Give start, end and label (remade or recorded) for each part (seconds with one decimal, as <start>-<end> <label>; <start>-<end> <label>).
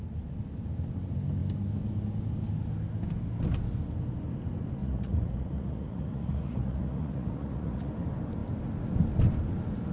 0.0-4.8 recorded; 4.8-7.9 remade; 7.9-9.9 recorded